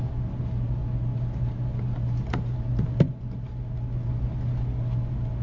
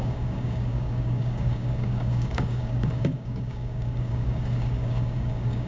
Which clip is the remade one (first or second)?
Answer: second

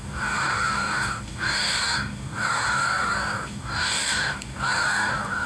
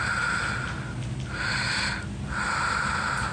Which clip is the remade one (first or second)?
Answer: first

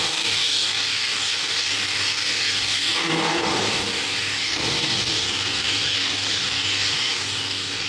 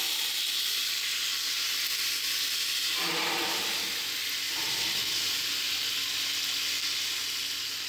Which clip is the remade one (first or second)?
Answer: first